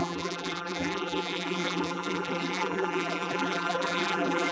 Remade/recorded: remade